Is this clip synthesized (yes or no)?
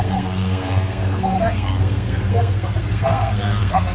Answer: yes